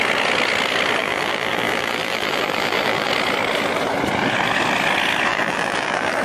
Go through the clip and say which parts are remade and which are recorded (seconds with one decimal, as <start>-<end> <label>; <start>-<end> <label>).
0.0-1.0 recorded; 1.0-3.1 remade; 3.1-5.3 recorded; 5.3-6.2 remade